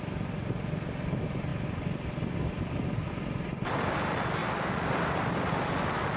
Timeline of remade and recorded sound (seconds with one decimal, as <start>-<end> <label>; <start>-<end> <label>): 0.0-1.5 recorded; 1.5-3.1 remade; 3.1-6.2 recorded